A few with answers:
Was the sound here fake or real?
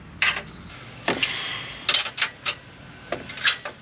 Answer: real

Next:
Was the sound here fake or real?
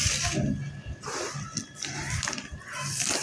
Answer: real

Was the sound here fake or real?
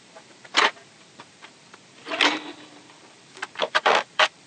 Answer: fake